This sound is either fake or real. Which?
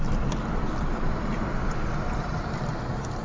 fake